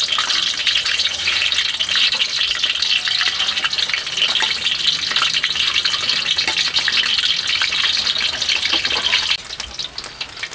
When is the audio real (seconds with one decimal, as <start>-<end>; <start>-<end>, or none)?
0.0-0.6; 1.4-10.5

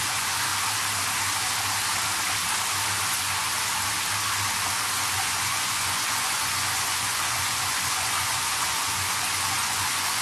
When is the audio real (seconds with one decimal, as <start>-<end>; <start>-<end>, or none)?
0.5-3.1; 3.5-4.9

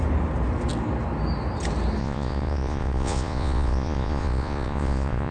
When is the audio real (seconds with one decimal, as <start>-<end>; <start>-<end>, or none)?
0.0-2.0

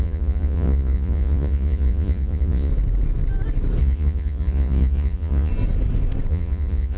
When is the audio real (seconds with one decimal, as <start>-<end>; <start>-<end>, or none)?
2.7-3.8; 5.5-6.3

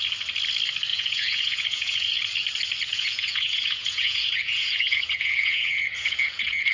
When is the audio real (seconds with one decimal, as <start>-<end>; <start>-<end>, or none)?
0.0-0.9; 2.2-2.9

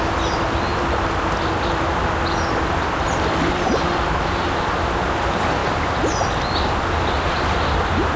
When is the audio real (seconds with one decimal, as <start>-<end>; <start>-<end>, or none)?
0.0-8.2

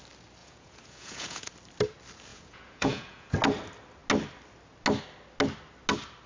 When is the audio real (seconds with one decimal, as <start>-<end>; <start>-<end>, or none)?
0.0-0.4; 1.5-2.3; 3.3-6.3